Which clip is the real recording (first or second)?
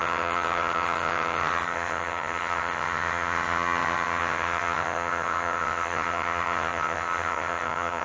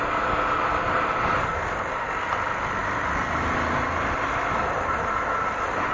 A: second